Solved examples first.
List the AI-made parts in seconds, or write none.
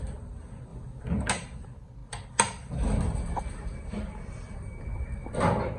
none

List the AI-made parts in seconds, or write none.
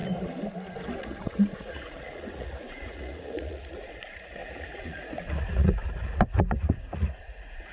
1.0-7.7